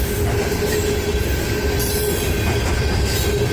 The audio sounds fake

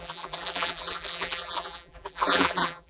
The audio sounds fake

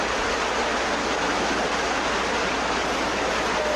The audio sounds real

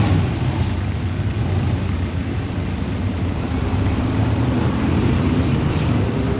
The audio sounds fake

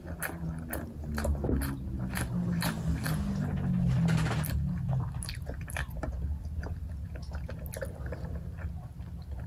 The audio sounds real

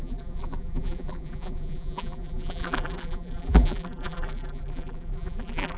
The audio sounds fake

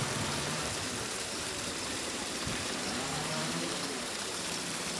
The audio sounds fake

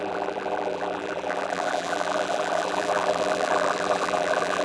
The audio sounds fake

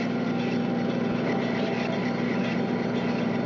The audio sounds real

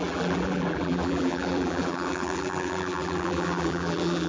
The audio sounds fake